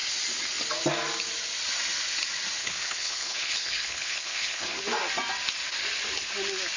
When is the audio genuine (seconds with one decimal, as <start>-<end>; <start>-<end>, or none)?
0.0-2.6; 4.8-6.8